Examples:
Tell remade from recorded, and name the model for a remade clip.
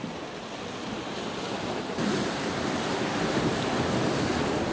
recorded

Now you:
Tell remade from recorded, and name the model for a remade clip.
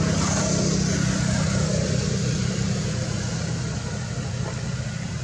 recorded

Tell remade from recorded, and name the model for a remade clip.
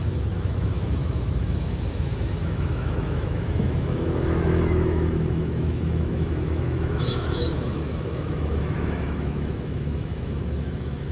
remade, autoencoder, DAC-VAE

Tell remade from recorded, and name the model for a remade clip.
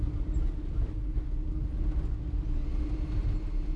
recorded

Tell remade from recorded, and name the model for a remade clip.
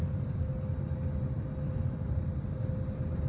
recorded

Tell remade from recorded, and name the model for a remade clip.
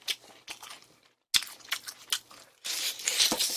recorded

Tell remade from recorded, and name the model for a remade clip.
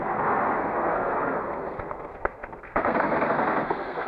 remade, codec, SNAC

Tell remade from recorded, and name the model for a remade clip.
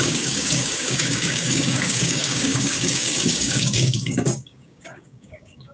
remade, codec, DAC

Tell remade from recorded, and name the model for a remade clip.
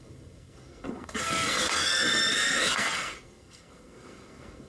remade, codec, SNAC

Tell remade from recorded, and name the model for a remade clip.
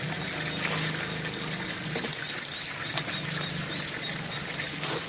recorded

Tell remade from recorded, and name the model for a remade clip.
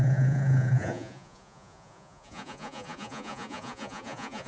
remade, vocoder, Vocos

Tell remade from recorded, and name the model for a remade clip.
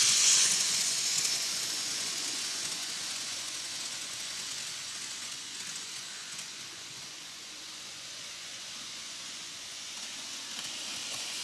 remade, vocoder, Vocos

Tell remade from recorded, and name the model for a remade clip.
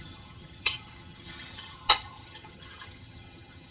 remade, vocoder, HiFi-GAN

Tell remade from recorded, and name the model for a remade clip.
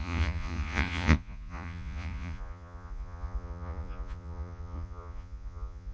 remade, vocoder, Vocos